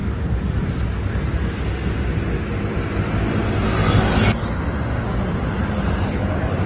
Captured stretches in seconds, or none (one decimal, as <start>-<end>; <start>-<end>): 0.0-6.7